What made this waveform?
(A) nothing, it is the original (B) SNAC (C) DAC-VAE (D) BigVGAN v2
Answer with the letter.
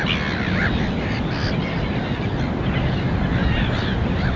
A